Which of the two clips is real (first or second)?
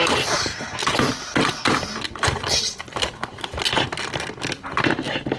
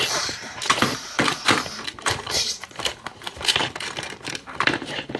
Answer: first